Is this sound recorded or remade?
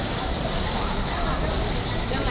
remade